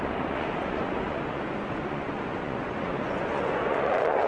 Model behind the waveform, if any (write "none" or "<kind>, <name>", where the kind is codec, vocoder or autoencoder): vocoder, Vocos